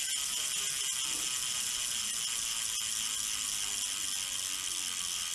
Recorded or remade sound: remade